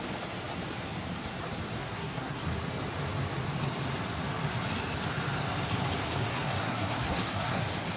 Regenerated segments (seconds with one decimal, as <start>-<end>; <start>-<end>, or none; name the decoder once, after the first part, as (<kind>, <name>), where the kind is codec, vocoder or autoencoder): 1.8-2.4 (codec, SNAC); 6.3-7.6